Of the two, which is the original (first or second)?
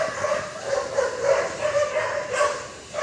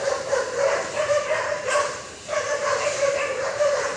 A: first